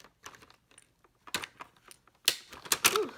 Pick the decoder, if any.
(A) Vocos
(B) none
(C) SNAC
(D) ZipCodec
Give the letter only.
B